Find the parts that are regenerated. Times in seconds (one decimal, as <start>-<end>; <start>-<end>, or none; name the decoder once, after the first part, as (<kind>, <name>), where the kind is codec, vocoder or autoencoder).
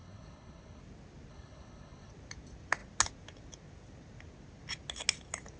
0.0-0.8 (codec, HILCodec); 1.3-2.1